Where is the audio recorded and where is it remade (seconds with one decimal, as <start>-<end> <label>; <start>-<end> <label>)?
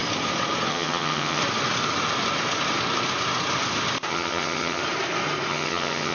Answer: 0.0-0.7 recorded; 0.7-1.4 remade; 1.4-4.1 recorded; 4.1-4.8 remade; 4.8-5.5 recorded; 5.5-6.1 remade